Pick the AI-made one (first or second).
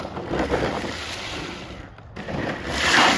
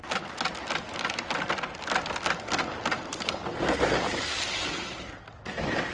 first